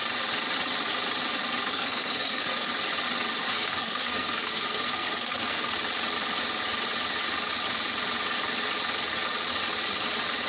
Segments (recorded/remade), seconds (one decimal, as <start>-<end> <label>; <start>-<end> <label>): 0.0-1.7 recorded; 1.7-2.7 remade; 2.7-3.5 recorded; 3.5-5.7 remade; 5.7-10.5 recorded